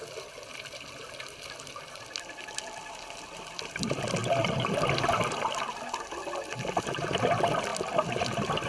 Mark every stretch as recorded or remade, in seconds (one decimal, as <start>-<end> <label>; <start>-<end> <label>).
0.0-8.7 recorded